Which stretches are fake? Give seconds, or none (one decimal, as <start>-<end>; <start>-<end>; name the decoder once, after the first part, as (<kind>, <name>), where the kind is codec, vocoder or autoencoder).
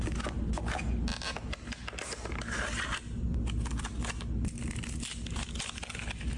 none